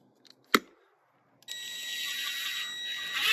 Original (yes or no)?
yes